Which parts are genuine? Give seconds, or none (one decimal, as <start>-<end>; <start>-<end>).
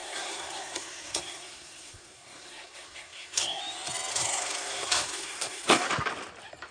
3.6-4.1; 5.9-6.7